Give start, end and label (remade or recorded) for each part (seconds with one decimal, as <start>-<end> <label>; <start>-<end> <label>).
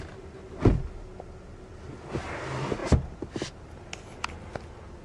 0.0-5.0 recorded